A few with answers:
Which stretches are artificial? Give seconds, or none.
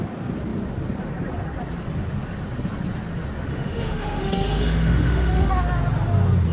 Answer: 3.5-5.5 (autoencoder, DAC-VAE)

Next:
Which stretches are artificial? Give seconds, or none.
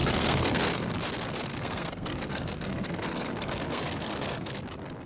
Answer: 0.0-0.9 (codec, SNAC); 1.5-4.6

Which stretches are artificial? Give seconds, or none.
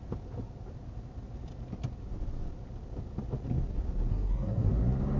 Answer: 4.1-4.7 (codec, SNAC)